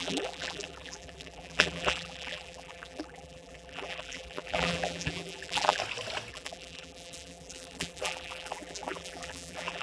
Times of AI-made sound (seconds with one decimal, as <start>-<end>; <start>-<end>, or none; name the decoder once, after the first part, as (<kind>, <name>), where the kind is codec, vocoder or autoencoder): 0.0-5.8 (vocoder, BigVGAN v2); 6.3-9.8

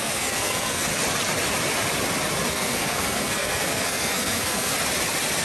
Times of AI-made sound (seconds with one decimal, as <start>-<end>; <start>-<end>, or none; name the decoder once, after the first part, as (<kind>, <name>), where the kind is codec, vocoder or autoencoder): 0.0-0.9 (codec, SNAC); 2.5-4.7